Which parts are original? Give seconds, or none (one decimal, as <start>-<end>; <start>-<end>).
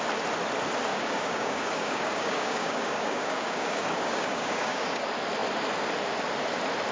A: 0.0-0.9; 5.0-6.9